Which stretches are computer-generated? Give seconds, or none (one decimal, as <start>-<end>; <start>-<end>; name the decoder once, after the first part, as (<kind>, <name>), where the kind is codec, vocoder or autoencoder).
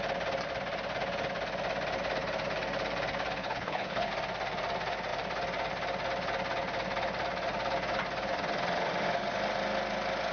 3.4-4.1 (codec, HILCodec)